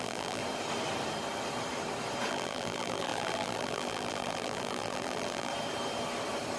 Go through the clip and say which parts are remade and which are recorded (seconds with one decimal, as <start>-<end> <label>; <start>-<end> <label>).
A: 0.0-0.4 remade; 0.4-2.3 recorded; 2.3-5.5 remade; 5.5-6.6 recorded